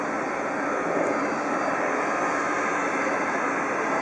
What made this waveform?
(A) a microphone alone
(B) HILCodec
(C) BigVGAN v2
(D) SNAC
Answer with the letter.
A